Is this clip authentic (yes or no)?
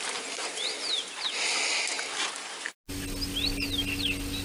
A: yes